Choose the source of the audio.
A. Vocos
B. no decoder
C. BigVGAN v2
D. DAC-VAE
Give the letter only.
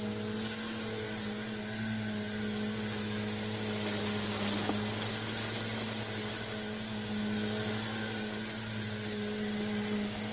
B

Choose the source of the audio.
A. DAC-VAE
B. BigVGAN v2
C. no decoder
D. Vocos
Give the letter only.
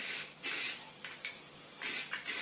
C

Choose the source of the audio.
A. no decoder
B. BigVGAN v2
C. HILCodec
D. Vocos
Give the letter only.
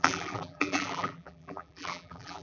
B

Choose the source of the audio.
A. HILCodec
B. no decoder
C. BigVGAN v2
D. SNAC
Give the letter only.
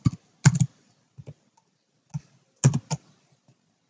B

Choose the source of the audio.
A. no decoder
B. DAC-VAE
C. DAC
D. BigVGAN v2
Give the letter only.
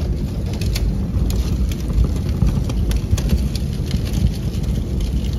A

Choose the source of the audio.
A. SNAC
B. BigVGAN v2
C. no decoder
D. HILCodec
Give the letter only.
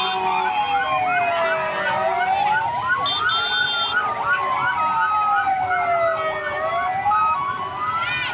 C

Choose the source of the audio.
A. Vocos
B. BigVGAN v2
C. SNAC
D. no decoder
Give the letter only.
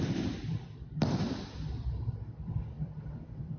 B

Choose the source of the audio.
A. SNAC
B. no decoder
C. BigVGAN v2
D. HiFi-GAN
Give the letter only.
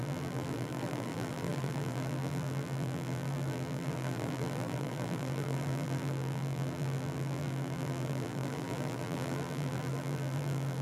C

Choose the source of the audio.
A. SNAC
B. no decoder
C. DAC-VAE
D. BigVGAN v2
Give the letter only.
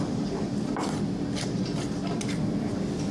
B